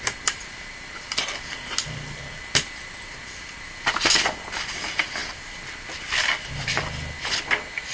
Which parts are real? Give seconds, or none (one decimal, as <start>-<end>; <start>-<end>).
0.0-7.9